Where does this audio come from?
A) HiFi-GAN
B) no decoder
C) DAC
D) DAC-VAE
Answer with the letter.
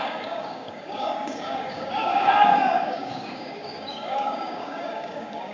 C